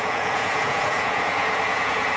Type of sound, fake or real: fake